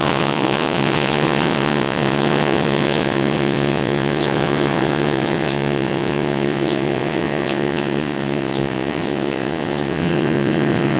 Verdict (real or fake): fake